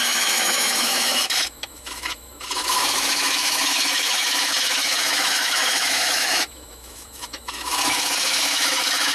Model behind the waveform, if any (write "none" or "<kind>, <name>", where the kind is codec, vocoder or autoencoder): autoencoder, DAC-VAE